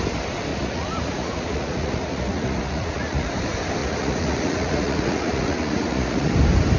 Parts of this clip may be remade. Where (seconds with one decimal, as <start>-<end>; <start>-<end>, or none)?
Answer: 0.5-3.3; 3.8-6.3